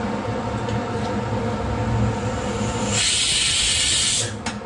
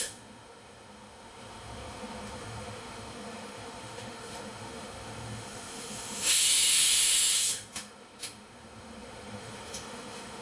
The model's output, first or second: second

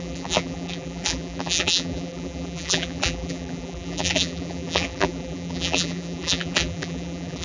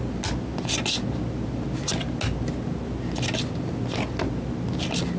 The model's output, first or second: first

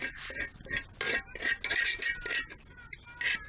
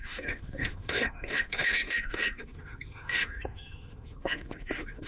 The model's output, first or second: second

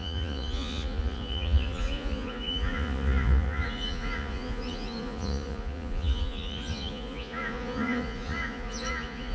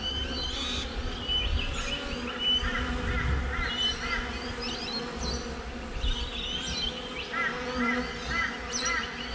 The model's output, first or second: first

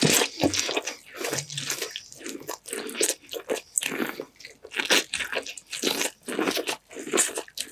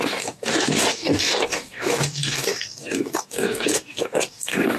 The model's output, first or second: second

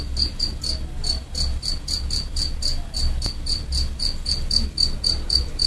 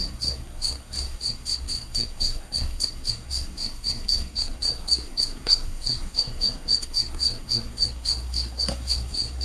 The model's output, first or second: second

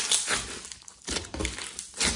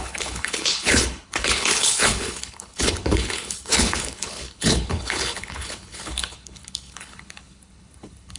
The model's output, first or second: second